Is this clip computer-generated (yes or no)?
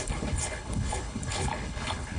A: yes